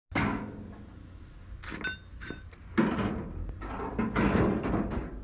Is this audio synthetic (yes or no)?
no